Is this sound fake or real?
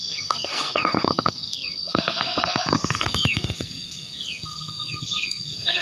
fake